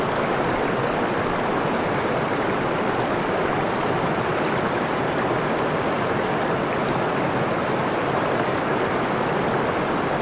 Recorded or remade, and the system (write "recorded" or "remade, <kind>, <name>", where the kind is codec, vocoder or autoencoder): recorded